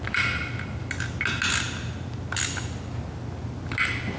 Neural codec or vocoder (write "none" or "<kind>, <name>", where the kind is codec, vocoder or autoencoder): none